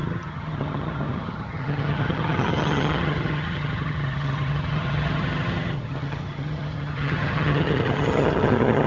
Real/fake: fake